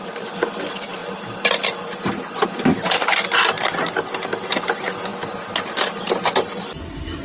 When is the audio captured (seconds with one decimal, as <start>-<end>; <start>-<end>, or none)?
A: 0.0-7.2